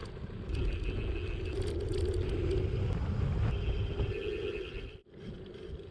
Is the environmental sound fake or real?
real